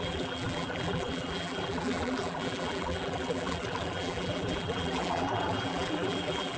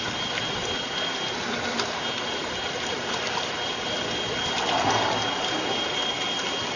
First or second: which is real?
second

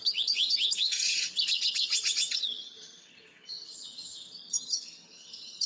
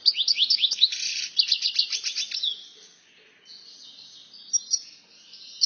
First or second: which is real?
second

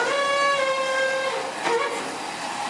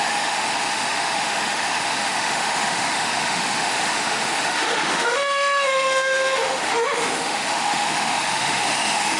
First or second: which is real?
first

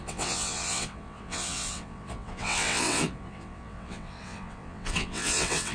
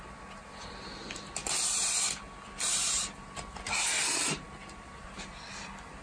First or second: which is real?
second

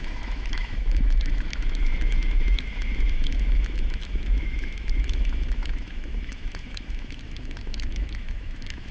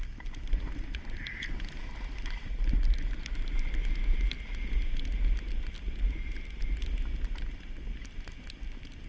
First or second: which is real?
second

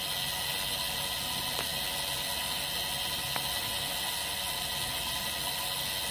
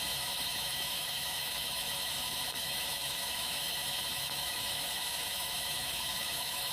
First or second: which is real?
first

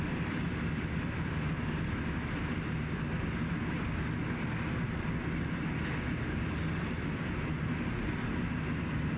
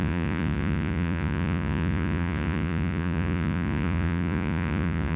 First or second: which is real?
first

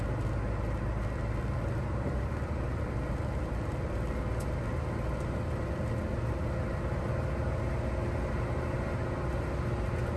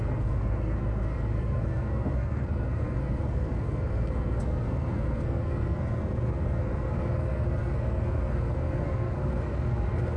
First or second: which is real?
first